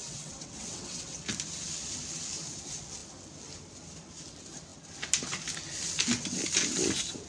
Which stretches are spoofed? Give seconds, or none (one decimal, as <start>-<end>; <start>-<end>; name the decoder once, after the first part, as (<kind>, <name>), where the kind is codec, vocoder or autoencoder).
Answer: 0.0-1.2 (vocoder, WaveNeXt)